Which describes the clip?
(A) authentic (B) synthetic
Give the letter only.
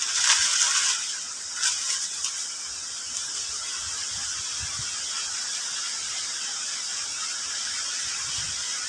A